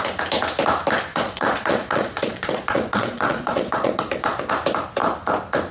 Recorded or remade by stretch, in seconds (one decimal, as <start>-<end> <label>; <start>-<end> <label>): 0.0-1.1 recorded; 1.1-4.5 remade; 4.5-5.7 recorded